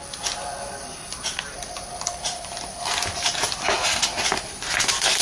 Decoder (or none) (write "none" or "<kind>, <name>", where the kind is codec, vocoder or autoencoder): none